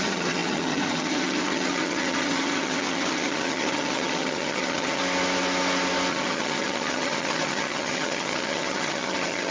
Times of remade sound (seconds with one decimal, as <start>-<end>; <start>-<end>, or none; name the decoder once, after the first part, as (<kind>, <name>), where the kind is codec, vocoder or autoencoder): 0.0-5.0 (vocoder, HiFi-GAN); 6.1-9.5